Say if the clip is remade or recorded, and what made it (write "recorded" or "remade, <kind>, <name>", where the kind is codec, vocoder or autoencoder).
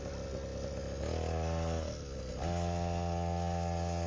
recorded